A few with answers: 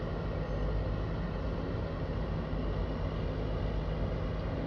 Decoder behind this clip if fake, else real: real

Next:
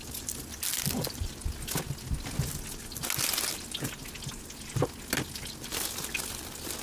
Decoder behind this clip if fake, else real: real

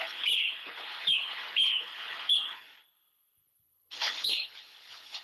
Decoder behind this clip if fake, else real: fake, codec, HILCodec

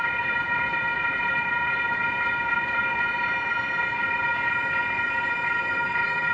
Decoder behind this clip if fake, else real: real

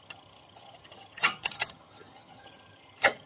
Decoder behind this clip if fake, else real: fake, vocoder, HiFi-GAN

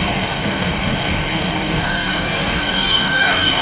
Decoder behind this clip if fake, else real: fake, codec, DAC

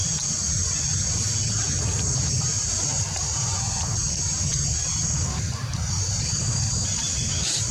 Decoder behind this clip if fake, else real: real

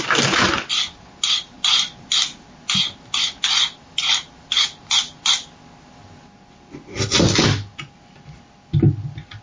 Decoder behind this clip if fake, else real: real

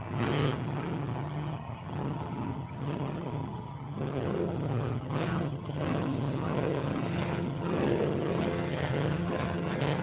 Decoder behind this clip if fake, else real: fake, vocoder, HiFi-GAN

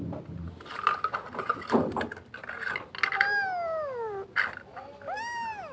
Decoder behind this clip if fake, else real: real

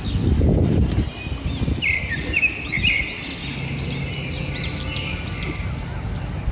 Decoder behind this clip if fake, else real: real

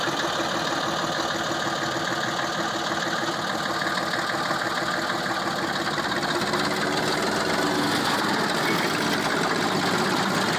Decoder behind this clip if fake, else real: real